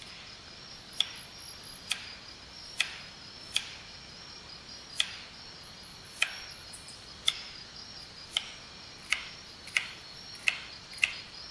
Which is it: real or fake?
real